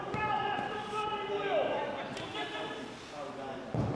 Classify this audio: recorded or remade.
recorded